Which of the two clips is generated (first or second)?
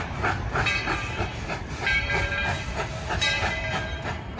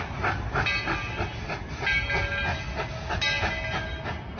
first